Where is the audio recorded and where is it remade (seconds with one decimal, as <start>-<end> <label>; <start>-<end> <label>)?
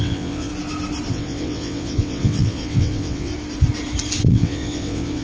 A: 0.0-0.5 remade; 0.5-1.1 recorded; 1.1-3.3 remade; 3.3-4.3 recorded; 4.3-5.2 remade